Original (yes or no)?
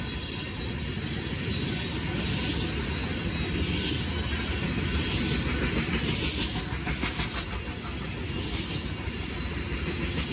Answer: yes